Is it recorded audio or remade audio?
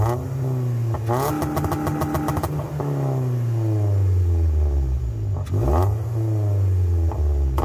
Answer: recorded